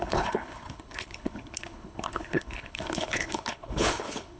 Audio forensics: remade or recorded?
remade